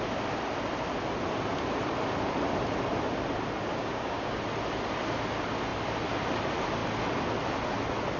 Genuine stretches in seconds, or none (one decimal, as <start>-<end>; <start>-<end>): 0.0-3.7; 4.4-8.2